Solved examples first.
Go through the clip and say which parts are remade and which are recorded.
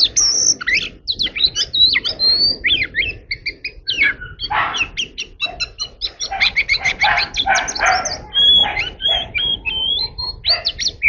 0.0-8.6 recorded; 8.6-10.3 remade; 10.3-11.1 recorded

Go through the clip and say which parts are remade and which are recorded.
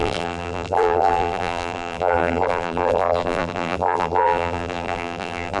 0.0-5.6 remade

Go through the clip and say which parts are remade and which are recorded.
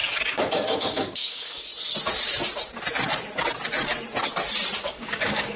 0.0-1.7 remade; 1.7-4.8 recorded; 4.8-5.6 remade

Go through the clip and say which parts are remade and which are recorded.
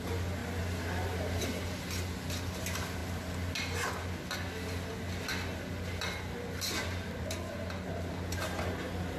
0.0-9.2 recorded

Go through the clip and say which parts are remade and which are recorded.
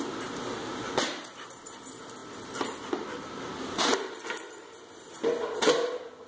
0.0-6.3 recorded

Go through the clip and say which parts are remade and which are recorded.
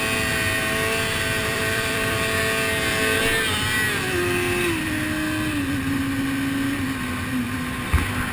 0.0-1.4 recorded; 1.4-2.4 remade; 2.4-8.3 recorded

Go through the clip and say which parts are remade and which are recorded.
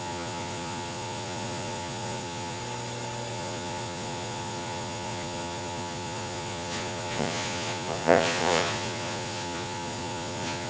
0.0-2.6 remade; 2.6-3.3 recorded; 3.3-10.7 remade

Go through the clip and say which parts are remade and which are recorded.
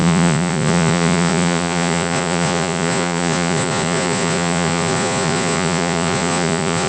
0.0-6.9 remade